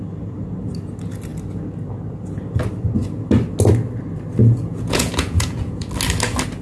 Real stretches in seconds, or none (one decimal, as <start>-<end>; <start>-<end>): 0.0-4.4; 5.9-6.6